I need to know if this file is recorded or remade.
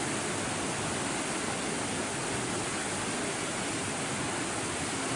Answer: recorded